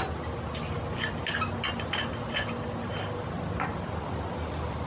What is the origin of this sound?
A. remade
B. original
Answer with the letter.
B